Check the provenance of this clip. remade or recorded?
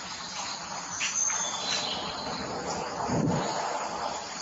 recorded